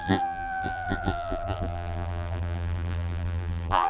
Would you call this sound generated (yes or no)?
yes